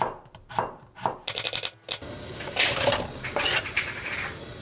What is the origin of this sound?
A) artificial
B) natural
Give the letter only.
B